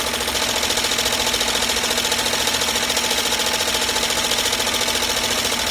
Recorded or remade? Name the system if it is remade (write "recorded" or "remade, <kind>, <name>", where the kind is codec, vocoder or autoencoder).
recorded